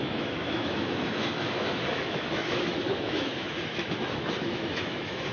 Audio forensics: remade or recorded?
remade